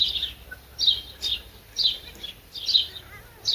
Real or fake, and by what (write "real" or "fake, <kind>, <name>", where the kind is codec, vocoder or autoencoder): real